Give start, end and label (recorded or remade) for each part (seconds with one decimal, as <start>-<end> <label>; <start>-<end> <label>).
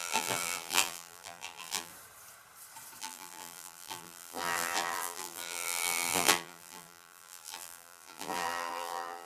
0.0-1.9 remade; 1.9-3.0 recorded; 3.0-9.3 remade